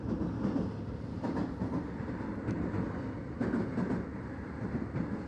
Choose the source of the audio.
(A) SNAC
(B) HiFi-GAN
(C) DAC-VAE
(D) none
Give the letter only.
D